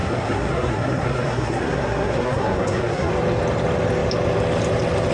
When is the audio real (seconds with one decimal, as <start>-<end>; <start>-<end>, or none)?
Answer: 3.1-5.1